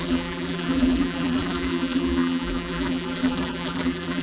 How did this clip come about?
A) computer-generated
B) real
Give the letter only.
A